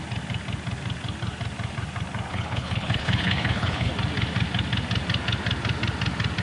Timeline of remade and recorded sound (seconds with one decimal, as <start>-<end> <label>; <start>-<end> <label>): 0.0-2.3 recorded; 2.3-3.9 remade; 3.9-6.4 recorded